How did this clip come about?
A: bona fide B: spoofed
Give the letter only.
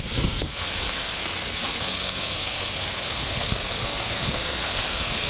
B